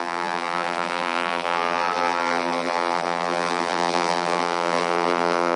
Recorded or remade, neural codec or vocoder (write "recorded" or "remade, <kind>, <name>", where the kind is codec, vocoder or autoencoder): remade, vocoder, BigVGAN v2